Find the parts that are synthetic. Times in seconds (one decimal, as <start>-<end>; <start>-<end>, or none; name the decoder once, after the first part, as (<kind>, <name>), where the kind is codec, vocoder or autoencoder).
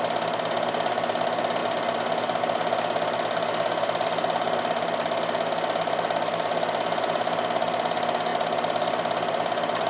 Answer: none